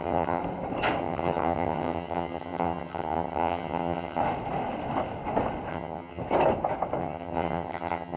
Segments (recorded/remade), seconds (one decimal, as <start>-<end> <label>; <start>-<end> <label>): 0.0-0.4 remade; 0.4-1.0 recorded; 1.0-4.2 remade; 4.2-5.7 recorded; 5.7-6.2 remade; 6.2-7.0 recorded; 7.0-8.2 remade

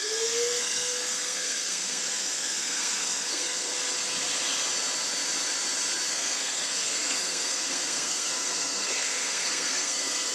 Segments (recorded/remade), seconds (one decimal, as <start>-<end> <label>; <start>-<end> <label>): 0.0-3.7 remade; 3.7-6.1 recorded; 6.1-10.3 remade

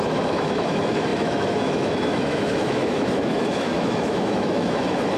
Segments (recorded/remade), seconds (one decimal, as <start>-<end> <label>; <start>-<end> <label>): 0.0-5.2 remade